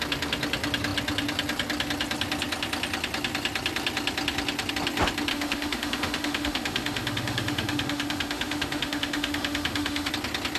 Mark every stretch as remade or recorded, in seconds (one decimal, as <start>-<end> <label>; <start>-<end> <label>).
0.0-5.3 recorded; 5.3-10.1 remade; 10.1-10.6 recorded